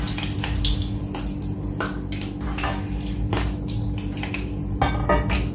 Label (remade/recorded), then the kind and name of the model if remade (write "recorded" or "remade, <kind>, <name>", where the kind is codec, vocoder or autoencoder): recorded